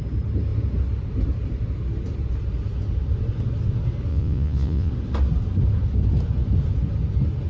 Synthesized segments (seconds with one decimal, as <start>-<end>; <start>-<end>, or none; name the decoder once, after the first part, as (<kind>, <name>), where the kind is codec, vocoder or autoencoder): 4.1-4.9 (vocoder, Vocos)